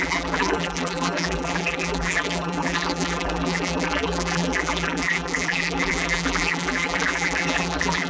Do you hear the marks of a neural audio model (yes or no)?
yes